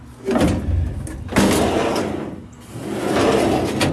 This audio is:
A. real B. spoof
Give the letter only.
A